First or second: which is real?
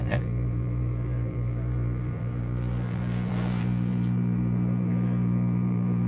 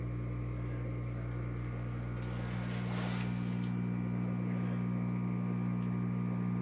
second